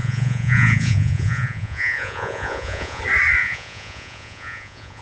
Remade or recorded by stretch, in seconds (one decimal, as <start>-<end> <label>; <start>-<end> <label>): 0.0-3.0 remade; 3.0-3.4 recorded; 3.4-5.0 remade